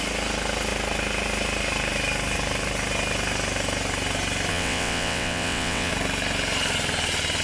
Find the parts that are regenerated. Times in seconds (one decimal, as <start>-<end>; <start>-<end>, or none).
4.5-5.9